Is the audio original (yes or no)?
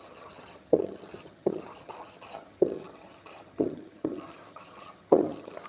no